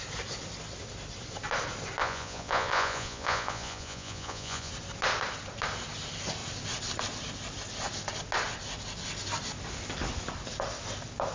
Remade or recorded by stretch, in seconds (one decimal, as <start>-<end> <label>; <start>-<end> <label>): 0.0-2.0 recorded; 2.0-4.7 remade; 4.7-11.3 recorded